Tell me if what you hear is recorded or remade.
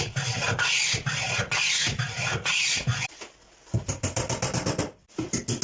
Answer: recorded